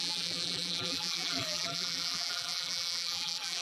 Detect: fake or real fake